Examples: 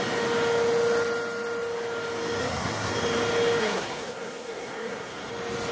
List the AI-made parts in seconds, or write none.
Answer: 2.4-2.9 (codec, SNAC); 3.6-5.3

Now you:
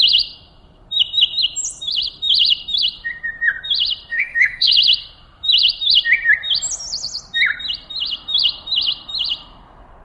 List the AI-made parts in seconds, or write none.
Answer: 4.1-4.7 (autoencoder, DAC-VAE)

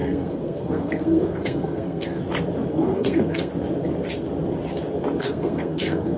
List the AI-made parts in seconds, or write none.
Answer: 0.0-2.2 (codec, SNAC); 2.7-3.5; 5.2-6.2

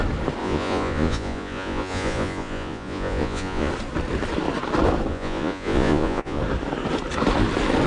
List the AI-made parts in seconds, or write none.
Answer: 0.4-3.7 (vocoder, Vocos); 5.1-6.4

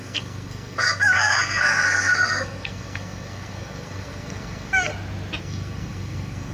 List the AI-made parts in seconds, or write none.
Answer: 0.0-4.9 (codec, SNAC); 5.4-6.5

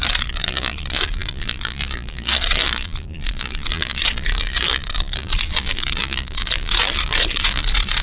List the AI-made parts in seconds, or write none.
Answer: 0.0-8.0 (vocoder, Vocos)

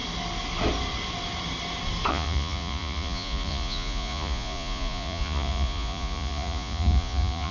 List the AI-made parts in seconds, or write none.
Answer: 2.1-7.5 (vocoder, Vocos)